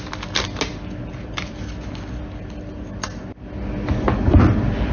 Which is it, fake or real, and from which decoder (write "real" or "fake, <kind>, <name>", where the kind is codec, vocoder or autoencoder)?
real